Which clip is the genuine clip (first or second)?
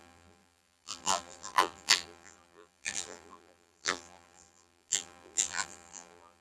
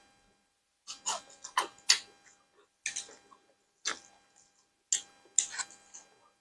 second